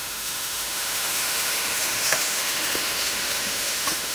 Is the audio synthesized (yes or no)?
yes